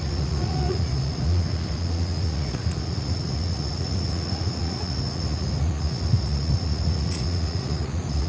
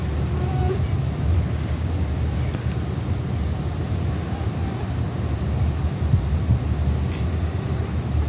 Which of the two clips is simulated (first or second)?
first